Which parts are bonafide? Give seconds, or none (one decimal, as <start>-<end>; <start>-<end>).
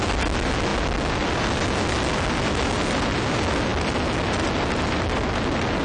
0.0-5.8